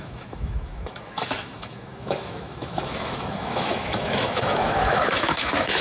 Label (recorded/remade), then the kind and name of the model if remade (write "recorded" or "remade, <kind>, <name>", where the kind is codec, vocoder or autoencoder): remade, autoencoder, DAC-VAE